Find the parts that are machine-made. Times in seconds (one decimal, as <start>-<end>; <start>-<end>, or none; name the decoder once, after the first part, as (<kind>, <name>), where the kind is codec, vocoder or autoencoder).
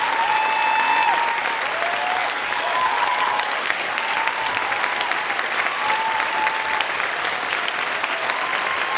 2.2-3.9 (codec, DAC)